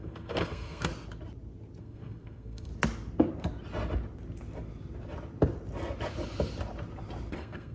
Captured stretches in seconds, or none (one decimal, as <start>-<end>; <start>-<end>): 0.9-1.8; 2.7-7.3